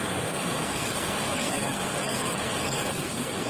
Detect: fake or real fake